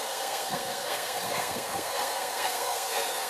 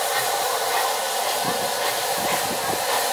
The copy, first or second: first